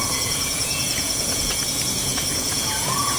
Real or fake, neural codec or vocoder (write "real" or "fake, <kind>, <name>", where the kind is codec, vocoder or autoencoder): fake, vocoder, Vocos